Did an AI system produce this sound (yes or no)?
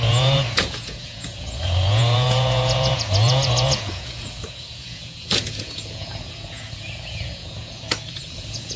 yes